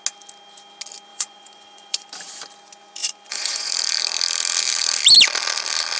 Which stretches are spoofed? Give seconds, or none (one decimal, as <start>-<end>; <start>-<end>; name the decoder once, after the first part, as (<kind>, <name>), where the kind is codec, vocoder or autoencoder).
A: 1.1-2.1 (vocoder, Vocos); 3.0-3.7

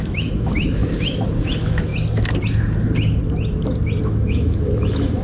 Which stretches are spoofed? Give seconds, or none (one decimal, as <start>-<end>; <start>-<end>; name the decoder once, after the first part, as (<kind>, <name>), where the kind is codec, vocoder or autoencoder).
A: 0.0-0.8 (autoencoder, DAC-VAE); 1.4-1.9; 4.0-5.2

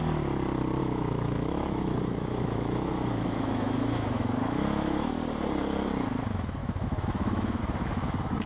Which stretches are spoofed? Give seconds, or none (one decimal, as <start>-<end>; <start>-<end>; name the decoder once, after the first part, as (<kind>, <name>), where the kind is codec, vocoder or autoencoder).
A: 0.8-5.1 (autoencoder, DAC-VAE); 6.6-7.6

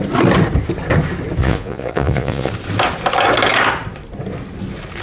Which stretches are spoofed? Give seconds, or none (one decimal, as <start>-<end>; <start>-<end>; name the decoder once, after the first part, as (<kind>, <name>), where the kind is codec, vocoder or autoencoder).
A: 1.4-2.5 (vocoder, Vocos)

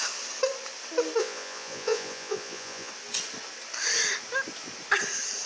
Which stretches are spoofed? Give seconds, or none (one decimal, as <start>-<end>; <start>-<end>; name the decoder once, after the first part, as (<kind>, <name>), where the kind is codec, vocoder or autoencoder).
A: 1.2-2.9 (vocoder, Vocos)